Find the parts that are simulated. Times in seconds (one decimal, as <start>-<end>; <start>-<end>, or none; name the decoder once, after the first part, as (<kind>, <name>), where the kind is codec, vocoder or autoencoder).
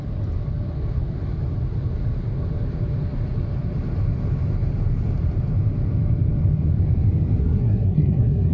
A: 7.4-8.5 (codec, SNAC)